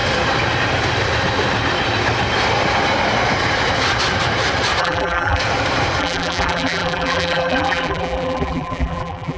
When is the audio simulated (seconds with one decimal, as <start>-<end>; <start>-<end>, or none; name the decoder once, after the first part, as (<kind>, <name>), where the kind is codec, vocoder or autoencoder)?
4.8-5.4 (vocoder, BigVGAN v2); 6.0-9.4